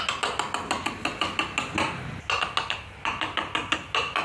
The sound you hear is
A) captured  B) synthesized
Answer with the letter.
A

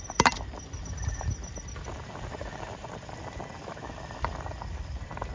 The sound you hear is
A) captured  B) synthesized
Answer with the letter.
A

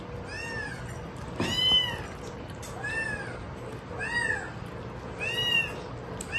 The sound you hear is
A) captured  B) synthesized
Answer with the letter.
A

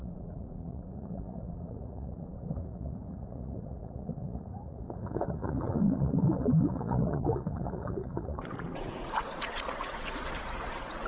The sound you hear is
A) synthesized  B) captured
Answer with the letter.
A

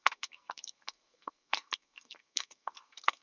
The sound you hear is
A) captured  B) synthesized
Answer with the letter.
B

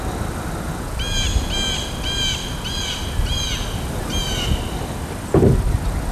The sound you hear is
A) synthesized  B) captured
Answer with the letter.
B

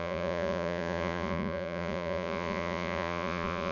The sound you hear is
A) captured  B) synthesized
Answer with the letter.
B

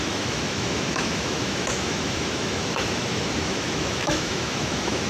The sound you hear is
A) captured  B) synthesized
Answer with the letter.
B